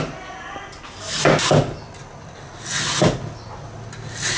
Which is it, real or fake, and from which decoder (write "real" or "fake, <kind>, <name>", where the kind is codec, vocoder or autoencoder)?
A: real